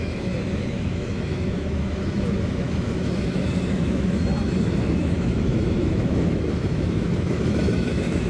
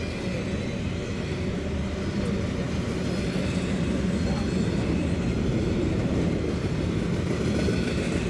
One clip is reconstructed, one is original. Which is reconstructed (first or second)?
first